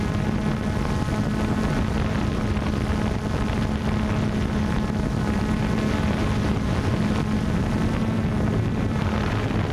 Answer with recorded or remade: recorded